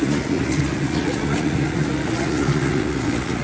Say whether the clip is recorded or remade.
remade